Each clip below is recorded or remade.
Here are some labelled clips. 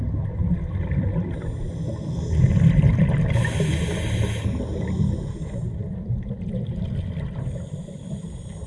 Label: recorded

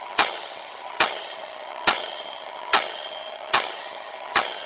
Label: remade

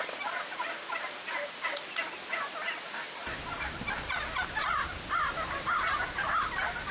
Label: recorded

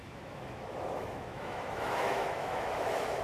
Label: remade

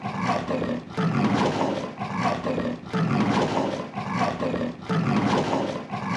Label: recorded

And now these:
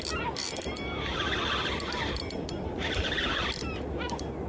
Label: recorded